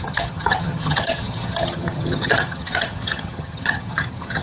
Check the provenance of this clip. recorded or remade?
remade